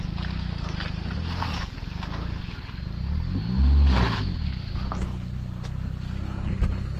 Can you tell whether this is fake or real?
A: real